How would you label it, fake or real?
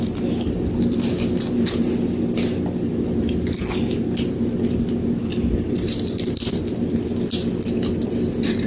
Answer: real